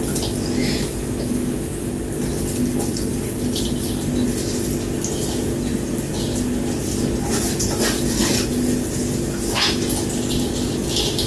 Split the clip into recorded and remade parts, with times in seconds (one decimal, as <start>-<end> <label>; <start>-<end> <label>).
0.0-0.6 recorded; 0.6-1.9 remade; 1.9-11.3 recorded